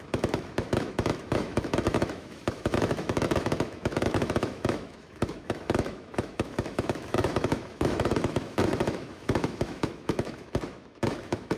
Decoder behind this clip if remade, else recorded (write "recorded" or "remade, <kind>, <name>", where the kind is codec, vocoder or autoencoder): remade, autoencoder, DAC-VAE